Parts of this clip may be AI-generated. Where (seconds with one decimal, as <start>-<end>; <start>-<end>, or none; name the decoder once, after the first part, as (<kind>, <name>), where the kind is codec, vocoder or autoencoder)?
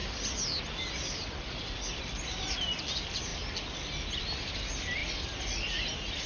none